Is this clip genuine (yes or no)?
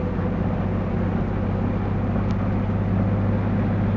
yes